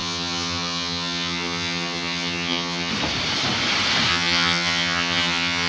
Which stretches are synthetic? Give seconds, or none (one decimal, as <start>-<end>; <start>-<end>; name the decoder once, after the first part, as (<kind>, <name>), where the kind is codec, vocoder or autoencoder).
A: 0.0-2.9 (vocoder, HiFi-GAN); 4.1-5.7